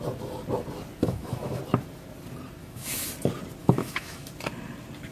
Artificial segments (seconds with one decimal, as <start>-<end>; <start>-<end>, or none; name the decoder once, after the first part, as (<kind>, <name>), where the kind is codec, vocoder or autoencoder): 1.0-1.6 (autoencoder, DAC-VAE); 2.6-3.1; 3.6-4.3